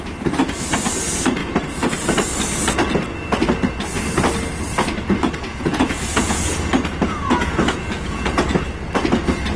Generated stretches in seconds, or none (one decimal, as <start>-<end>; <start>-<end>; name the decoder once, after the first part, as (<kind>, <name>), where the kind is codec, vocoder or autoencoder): 5.5-8.6 (vocoder, Vocos)